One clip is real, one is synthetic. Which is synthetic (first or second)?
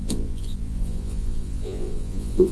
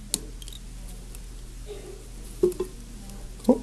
first